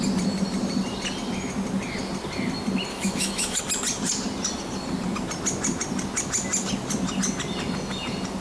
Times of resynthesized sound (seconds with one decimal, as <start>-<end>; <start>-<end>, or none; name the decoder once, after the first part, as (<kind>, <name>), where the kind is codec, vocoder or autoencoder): 2.9-3.6 (autoencoder, DAC-VAE)